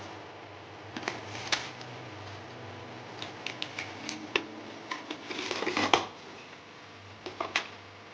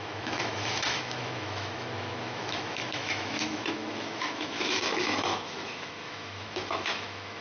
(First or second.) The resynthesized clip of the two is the second